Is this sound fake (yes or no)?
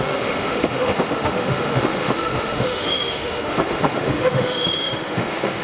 yes